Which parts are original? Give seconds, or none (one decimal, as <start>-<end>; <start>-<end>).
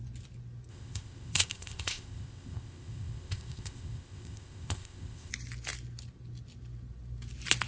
0.0-0.7; 5.3-7.7